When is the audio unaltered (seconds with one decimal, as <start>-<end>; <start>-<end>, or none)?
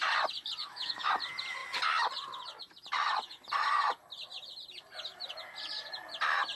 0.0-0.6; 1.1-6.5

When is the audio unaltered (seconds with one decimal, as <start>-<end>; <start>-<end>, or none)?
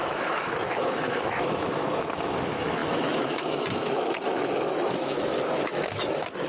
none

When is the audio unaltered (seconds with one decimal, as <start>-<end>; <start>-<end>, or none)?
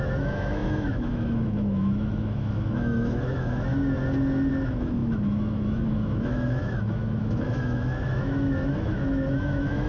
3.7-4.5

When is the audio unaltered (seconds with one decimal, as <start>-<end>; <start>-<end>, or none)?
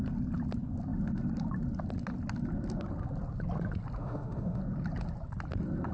0.0-4.0; 4.6-5.9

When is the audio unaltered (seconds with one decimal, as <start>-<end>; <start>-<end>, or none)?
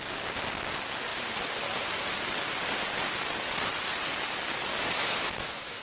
0.0-4.7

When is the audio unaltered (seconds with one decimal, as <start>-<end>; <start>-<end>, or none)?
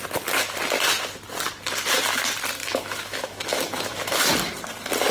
0.0-2.6; 4.3-5.1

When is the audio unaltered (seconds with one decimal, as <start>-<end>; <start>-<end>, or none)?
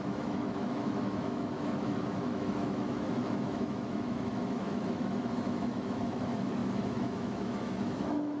none